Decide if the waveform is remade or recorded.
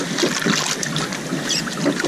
recorded